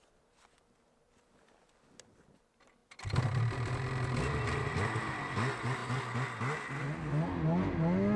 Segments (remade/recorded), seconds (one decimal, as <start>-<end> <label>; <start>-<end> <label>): 0.0-8.2 recorded